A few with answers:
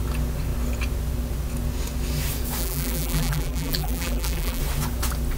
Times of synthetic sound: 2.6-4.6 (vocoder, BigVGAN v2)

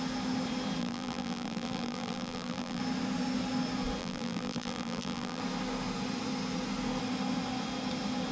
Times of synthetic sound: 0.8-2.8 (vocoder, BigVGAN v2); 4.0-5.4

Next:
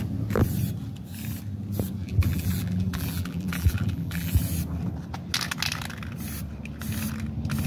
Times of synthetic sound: 2.0-4.4 (vocoder, BigVGAN v2)

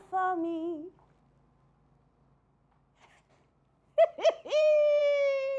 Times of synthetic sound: 3.0-5.0 (vocoder, BigVGAN v2)